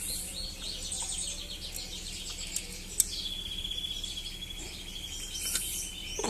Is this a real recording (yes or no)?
yes